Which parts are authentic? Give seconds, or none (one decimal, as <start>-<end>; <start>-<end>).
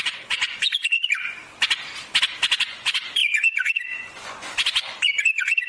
1.4-2.6